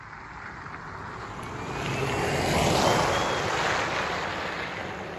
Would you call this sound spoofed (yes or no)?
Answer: no